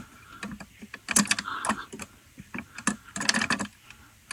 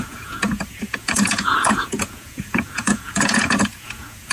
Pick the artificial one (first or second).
second